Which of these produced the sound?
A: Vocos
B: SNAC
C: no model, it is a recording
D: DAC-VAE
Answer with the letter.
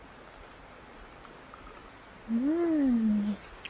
C